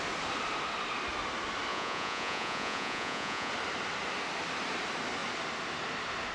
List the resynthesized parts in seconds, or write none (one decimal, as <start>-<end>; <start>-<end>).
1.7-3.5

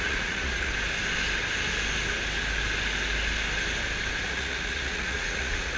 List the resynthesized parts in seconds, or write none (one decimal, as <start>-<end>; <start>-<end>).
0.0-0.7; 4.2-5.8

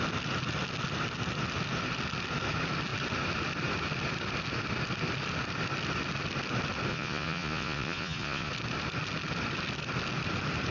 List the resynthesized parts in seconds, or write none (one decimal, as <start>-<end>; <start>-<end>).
6.9-8.5